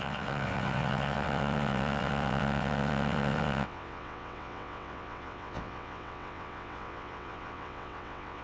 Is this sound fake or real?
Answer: fake